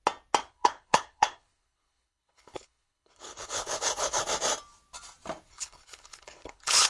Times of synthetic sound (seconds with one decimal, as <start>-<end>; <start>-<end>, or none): 0.4-4.2; 5.5-6.9